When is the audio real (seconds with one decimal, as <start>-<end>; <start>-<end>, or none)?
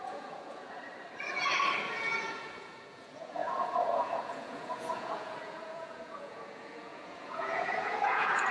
0.9-1.9